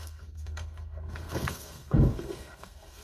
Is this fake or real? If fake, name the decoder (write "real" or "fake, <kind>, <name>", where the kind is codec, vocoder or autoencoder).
fake, codec, SNAC